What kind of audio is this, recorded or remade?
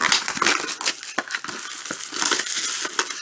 recorded